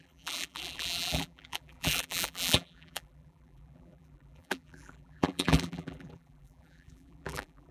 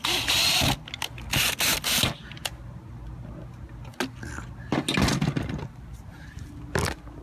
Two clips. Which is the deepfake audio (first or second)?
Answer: first